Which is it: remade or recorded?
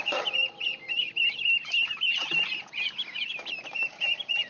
recorded